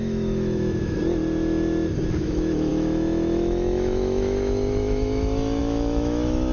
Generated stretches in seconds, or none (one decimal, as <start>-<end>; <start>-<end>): 0.0-1.0; 2.2-6.5